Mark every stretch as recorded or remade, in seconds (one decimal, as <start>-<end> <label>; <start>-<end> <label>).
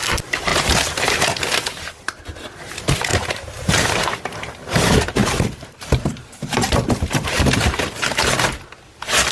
0.0-0.5 recorded; 0.5-1.4 remade; 1.4-3.1 recorded; 3.1-3.7 remade; 3.7-5.2 recorded; 5.2-7.8 remade; 7.8-9.3 recorded